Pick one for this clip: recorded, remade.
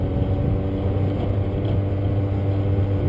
recorded